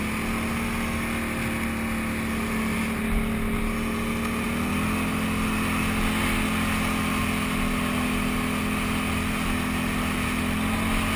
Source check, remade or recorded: recorded